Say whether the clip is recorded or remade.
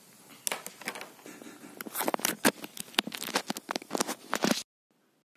recorded